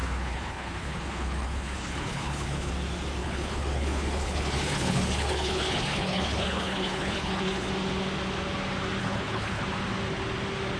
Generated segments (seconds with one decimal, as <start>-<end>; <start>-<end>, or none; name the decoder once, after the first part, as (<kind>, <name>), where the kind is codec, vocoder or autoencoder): 0.0-2.7 (codec, HILCodec); 3.2-7.7; 9.0-9.6